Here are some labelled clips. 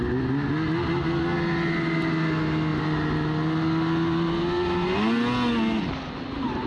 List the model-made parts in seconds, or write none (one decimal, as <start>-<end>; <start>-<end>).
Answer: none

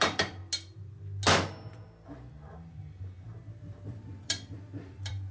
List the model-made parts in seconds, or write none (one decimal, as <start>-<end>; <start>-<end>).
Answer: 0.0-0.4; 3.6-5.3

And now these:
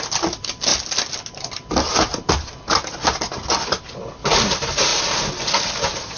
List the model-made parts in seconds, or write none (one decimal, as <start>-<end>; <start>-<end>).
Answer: none

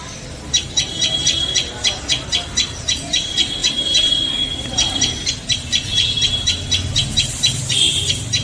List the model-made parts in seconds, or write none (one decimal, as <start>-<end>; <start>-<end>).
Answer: 3.6-4.1

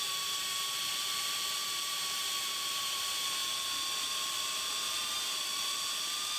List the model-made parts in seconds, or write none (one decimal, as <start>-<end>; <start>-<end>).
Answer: 0.0-3.4; 4.0-6.4

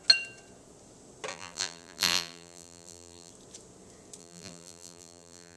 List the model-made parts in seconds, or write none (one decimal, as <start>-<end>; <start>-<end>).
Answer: 1.3-3.3; 4.2-5.6

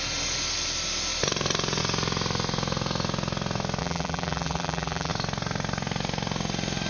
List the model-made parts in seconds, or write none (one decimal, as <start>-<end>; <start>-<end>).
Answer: 3.8-5.1